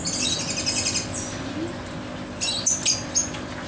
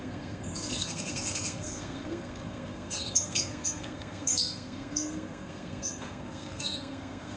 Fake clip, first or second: second